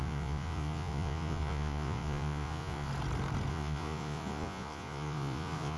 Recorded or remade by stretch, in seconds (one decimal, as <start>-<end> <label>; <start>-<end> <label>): 0.0-2.9 remade; 2.9-3.5 recorded; 3.5-5.8 remade